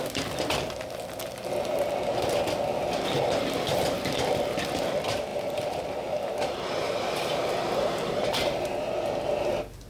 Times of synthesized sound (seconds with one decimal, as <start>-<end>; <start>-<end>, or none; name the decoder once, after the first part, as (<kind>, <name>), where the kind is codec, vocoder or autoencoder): 5.3-8.6 (vocoder, BigVGAN v2)